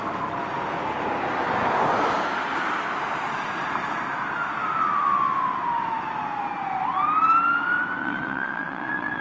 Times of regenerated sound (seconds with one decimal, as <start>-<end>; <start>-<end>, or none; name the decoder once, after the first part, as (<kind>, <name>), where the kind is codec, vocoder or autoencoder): 8.0-9.2 (vocoder, Vocos)